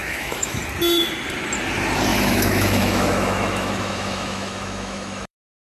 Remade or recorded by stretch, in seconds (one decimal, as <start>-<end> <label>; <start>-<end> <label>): 0.0-0.6 remade; 0.6-2.1 recorded; 2.1-5.7 remade